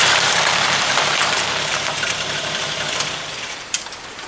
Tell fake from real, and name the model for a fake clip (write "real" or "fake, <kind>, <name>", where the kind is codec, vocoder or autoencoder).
fake, vocoder, BigVGAN v2